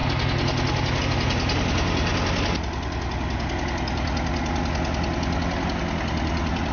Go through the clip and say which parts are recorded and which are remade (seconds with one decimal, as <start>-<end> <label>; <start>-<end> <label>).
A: 0.0-6.7 recorded